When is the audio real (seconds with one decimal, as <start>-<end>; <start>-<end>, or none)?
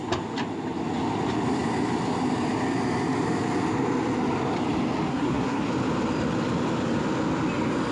0.0-5.1; 5.6-7.9